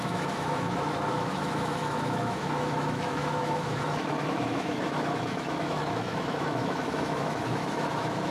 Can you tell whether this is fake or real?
fake